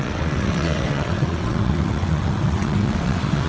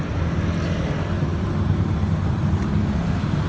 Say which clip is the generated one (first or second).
first